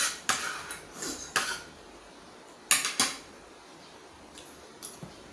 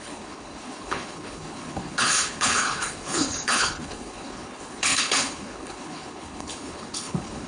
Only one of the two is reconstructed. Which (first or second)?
second